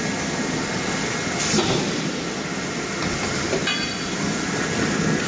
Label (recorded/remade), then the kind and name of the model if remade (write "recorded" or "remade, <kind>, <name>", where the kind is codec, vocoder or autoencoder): recorded